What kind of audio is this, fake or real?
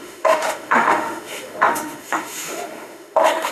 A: fake